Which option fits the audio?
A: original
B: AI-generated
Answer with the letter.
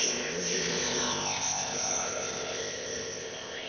B